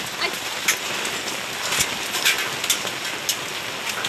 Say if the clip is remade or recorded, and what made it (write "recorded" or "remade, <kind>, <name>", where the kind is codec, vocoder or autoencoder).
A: recorded